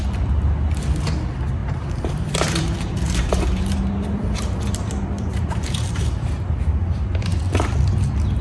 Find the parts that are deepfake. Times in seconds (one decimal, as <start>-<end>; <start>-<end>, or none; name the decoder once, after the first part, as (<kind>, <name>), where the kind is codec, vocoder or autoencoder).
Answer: 1.6-6.5 (vocoder, BigVGAN v2)